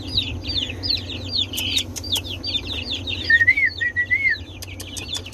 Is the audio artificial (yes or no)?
no